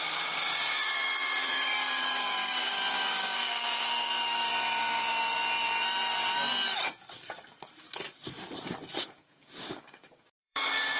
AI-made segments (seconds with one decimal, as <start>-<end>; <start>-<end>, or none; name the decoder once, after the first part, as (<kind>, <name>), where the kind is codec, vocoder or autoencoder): 0.0-4.5 (codec, DAC); 9.0-11.0